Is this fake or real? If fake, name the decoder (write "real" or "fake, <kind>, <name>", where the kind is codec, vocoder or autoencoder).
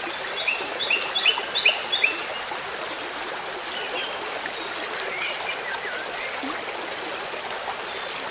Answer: real